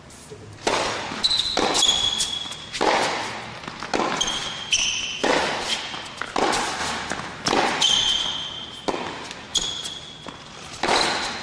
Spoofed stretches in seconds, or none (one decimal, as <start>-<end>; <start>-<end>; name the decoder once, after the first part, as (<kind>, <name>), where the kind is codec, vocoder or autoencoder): none